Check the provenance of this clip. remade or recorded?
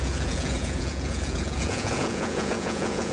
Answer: remade